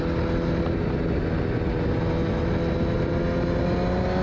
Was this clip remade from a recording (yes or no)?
no